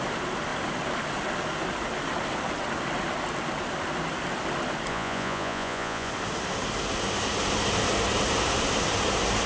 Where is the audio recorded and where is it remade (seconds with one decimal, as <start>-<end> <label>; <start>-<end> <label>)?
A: 0.0-4.9 recorded; 4.9-6.1 remade; 6.1-9.5 recorded